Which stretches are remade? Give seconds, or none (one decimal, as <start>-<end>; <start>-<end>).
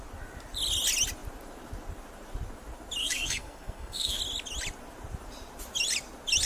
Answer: 3.0-4.2